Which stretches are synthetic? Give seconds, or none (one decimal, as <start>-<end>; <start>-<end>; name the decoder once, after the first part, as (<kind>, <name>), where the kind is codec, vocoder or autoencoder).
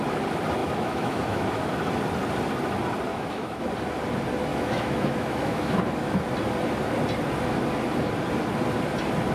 0.6-1.7 (autoencoder, DAC-VAE); 3.1-3.7; 4.5-5.8